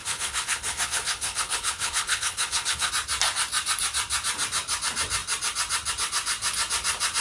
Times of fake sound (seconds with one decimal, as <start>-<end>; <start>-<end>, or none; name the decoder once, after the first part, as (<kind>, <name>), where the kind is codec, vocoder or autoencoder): 0.0-2.9 (codec, HILCodec)